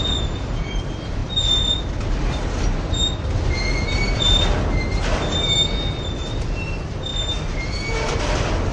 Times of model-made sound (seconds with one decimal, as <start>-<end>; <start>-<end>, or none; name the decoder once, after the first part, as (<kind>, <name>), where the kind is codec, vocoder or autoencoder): none